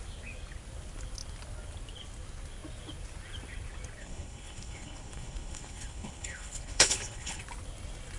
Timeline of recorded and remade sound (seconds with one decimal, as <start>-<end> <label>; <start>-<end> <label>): 0.0-4.0 recorded; 4.0-7.4 remade; 7.4-8.2 recorded